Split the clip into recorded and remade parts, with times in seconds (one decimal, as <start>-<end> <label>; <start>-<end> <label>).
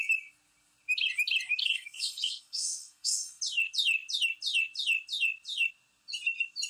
0.0-1.6 recorded; 1.6-3.4 remade; 3.4-6.7 recorded